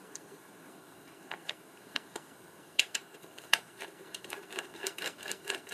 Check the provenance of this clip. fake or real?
fake